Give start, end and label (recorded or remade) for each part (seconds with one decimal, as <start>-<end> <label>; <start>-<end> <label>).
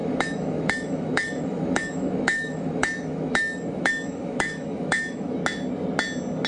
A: 0.0-5.4 remade; 5.4-6.5 recorded